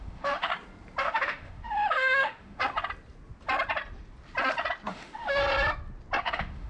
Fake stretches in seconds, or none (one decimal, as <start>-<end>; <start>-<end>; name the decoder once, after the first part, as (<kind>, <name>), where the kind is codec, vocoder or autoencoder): 0.0-0.5 (autoencoder, DAC-VAE); 1.0-2.6; 4.9-5.4; 6.2-6.7